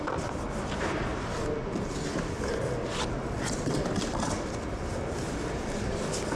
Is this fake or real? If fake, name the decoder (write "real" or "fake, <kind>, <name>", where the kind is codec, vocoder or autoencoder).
real